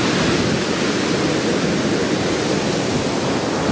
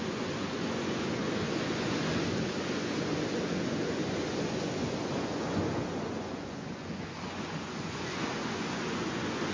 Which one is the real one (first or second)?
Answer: first